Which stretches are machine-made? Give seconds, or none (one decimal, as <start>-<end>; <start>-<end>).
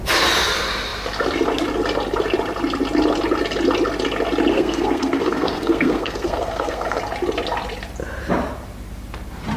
4.5-7.0